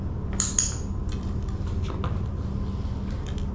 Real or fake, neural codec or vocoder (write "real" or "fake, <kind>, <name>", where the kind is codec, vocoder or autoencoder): fake, vocoder, BigVGAN v2